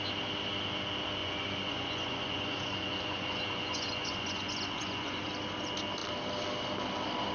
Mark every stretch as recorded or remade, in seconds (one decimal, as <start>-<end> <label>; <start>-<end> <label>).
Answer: 0.0-1.2 recorded; 1.2-5.2 remade; 5.2-7.3 recorded